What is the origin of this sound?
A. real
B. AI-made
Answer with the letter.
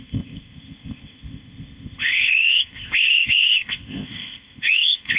B